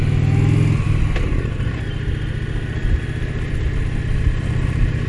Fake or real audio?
real